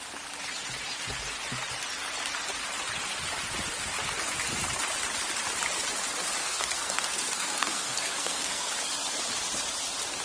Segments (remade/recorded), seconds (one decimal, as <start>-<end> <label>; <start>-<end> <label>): 0.0-6.4 recorded; 6.4-8.7 remade; 8.7-10.2 recorded